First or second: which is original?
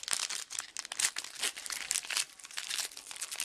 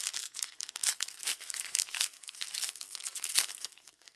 first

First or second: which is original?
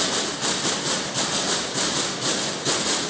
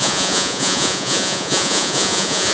first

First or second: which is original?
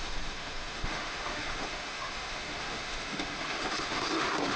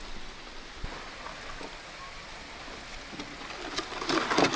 second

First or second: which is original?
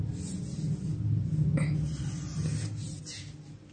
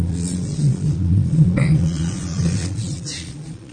first